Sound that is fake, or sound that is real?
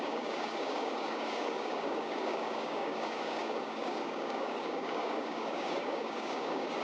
fake